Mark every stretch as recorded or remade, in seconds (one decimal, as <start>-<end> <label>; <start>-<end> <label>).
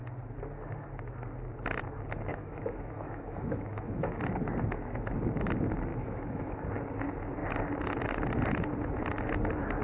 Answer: 0.0-2.3 recorded; 2.3-4.2 remade; 4.2-5.9 recorded; 5.9-6.6 remade; 6.6-9.8 recorded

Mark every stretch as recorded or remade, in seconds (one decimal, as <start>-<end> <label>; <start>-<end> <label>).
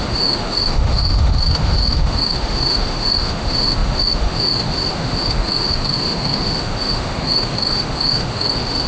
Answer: 0.0-8.9 remade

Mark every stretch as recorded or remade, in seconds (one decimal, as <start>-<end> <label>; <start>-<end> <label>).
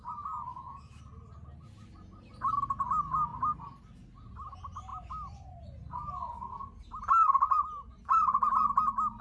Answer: 0.0-0.5 recorded; 0.5-1.0 remade; 1.0-9.2 recorded